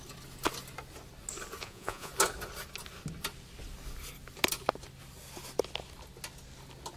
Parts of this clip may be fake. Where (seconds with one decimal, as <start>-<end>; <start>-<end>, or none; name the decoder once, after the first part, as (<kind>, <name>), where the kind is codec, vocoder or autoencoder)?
1.6-2.1 (vocoder, Vocos)